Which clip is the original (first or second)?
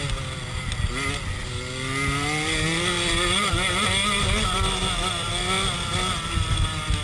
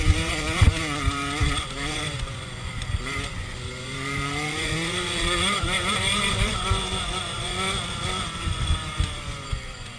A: first